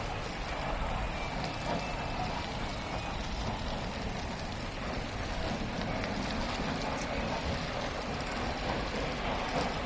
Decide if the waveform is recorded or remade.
recorded